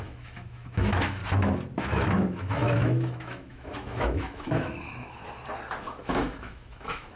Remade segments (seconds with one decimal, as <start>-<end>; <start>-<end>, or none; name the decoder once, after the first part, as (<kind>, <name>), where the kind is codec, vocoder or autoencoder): 0.0-1.2 (autoencoder, DAC-VAE); 1.8-5.2; 5.8-7.2